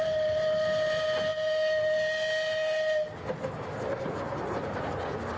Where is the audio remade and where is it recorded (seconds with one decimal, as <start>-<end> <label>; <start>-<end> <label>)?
0.0-5.4 recorded